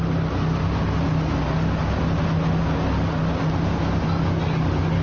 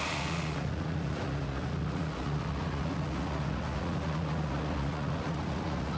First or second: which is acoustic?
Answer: first